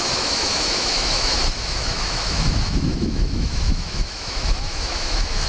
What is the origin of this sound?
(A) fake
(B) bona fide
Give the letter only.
A